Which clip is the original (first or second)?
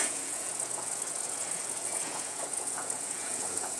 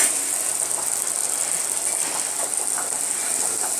second